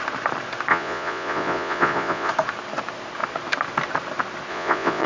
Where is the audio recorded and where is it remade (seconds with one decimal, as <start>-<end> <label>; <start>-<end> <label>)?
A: 0.0-0.7 recorded; 0.7-2.3 remade; 2.3-4.5 recorded; 4.5-5.1 remade